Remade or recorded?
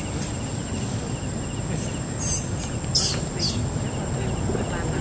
recorded